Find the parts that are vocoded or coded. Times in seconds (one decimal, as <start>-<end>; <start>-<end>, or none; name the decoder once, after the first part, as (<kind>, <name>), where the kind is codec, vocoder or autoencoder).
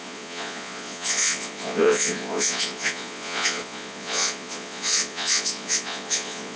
0.0-6.6 (vocoder, Vocos)